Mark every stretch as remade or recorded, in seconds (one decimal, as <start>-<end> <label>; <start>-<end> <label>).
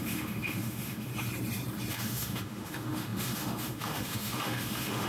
0.0-1.1 remade; 1.1-1.9 recorded; 1.9-5.1 remade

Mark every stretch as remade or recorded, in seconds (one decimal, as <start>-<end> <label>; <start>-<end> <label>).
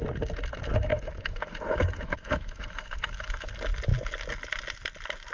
0.0-0.9 recorded; 0.9-3.5 remade; 3.5-5.3 recorded